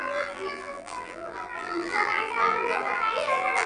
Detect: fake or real fake